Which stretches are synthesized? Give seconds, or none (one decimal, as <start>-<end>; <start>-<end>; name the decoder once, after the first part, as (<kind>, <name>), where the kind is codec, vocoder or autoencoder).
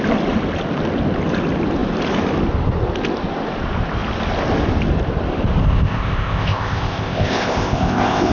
5.6-8.3 (codec, ZipCodec)